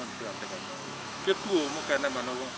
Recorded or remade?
remade